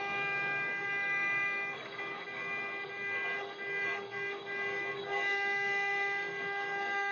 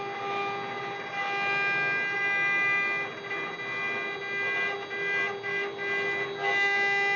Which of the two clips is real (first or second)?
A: second